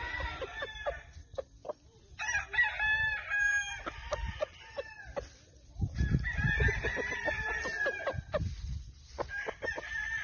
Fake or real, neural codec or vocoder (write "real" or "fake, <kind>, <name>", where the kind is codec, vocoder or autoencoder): fake, vocoder, BigVGAN v2